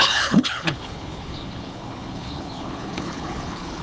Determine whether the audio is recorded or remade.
remade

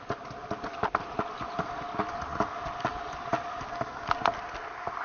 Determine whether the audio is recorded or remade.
recorded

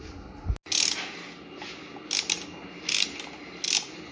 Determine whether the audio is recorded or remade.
recorded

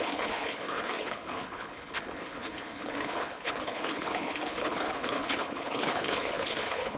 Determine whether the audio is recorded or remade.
remade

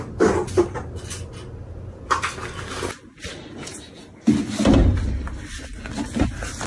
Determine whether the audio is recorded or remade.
recorded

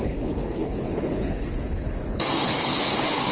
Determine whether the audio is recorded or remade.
remade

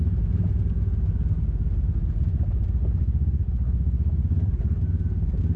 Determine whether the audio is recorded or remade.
recorded